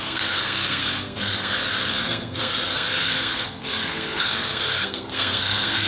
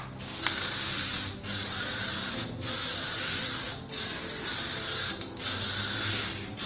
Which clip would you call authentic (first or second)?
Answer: second